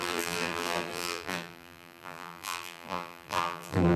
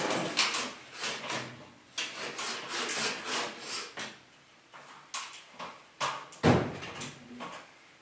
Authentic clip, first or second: second